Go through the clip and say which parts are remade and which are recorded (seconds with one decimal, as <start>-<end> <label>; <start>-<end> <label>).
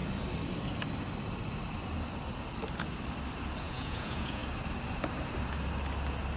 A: 0.0-3.6 recorded; 3.6-4.4 remade; 4.4-6.4 recorded